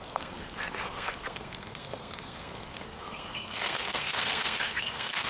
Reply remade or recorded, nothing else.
remade